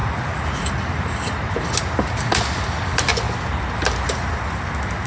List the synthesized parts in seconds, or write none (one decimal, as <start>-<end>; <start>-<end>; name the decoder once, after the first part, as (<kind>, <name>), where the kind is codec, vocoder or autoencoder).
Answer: none